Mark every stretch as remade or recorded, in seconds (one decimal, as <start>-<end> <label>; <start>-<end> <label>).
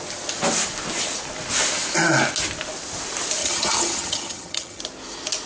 0.0-3.4 recorded; 3.4-4.8 remade; 4.8-5.5 recorded